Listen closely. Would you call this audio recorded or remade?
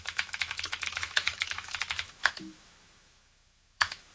remade